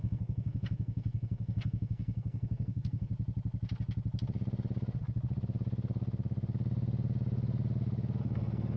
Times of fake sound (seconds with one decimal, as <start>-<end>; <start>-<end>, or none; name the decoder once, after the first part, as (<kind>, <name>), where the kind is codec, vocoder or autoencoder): 0.0-3.1 (codec, SNAC); 8.2-8.8